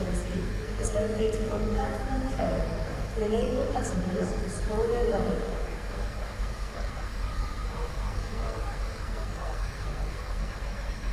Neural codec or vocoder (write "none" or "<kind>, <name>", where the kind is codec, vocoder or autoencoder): codec, SNAC